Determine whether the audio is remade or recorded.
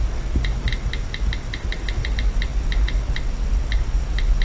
recorded